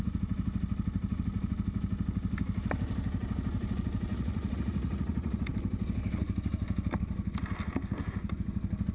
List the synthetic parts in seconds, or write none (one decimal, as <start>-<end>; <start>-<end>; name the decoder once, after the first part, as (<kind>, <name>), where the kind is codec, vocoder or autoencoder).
4.1-5.5 (vocoder, Vocos)